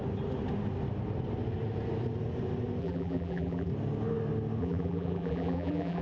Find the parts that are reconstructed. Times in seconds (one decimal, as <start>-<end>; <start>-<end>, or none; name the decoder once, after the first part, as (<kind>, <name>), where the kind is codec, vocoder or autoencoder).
2.8-3.7 (vocoder, BigVGAN v2); 4.6-6.0